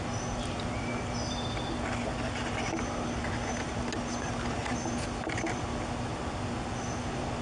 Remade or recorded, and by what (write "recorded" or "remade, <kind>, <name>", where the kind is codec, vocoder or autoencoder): recorded